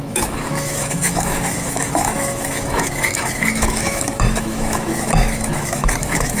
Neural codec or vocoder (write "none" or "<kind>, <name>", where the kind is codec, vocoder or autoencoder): autoencoder, DAC-VAE